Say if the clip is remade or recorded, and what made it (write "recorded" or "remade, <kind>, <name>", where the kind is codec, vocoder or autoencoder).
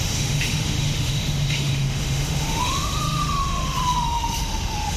remade, autoencoder, DAC-VAE